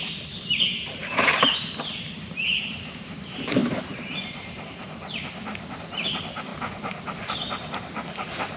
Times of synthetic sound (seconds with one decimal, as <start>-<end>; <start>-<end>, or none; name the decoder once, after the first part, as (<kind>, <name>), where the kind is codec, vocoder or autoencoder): 0.0-6.5 (vocoder, BigVGAN v2)